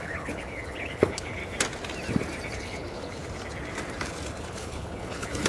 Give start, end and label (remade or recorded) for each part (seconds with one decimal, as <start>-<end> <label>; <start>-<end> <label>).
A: 0.0-1.4 remade; 1.4-2.5 recorded; 2.5-3.2 remade; 3.2-4.5 recorded; 4.5-5.5 remade